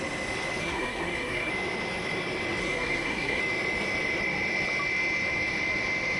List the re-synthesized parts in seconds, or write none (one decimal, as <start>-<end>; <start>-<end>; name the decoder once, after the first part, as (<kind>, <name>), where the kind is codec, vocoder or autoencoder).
0.6-1.5 (codec, SNAC); 2.6-3.4